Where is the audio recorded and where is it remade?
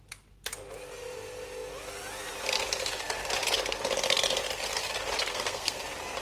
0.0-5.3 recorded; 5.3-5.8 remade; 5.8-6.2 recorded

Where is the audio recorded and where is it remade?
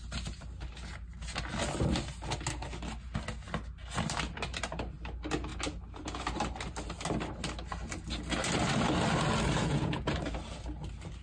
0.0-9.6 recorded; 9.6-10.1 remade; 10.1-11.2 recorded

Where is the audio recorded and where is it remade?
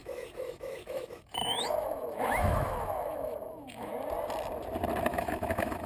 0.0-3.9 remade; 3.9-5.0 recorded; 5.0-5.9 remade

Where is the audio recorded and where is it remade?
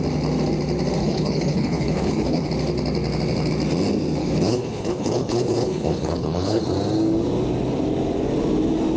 0.0-1.0 recorded; 1.0-2.5 remade; 2.5-4.2 recorded; 4.2-6.6 remade; 6.6-9.0 recorded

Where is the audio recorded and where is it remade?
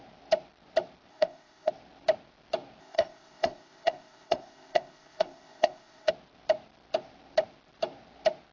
0.0-1.1 recorded; 1.1-1.7 remade; 1.7-2.8 recorded; 2.8-6.1 remade; 6.1-8.5 recorded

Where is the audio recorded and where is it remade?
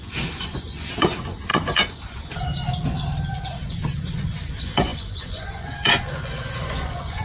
0.0-2.5 remade; 2.5-3.3 recorded; 3.3-7.2 remade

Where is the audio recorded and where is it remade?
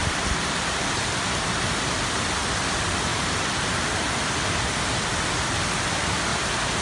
0.0-1.0 remade; 1.0-3.1 recorded; 3.1-3.7 remade; 3.7-6.3 recorded; 6.3-6.8 remade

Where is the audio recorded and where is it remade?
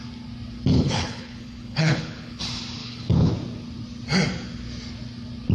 0.0-0.7 recorded; 0.7-2.4 remade; 2.4-2.8 recorded; 2.8-3.3 remade; 3.3-5.5 recorded